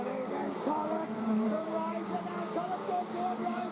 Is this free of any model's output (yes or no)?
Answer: no